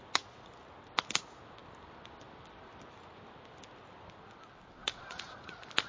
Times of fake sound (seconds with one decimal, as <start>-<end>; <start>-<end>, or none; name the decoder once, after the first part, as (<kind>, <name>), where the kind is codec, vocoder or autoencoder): 0.0-0.5 (vocoder, Vocos); 4.8-5.5